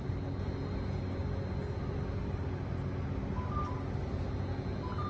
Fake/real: real